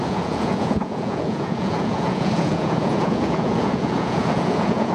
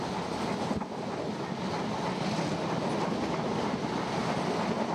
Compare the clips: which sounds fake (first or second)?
first